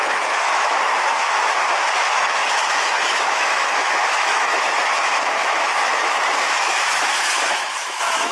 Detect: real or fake fake